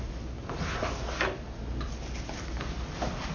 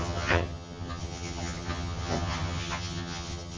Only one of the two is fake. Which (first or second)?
second